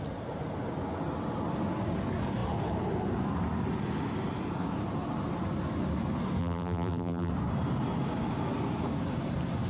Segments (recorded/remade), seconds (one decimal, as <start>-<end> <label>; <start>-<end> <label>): 0.0-6.4 recorded; 6.4-7.3 remade; 7.3-9.7 recorded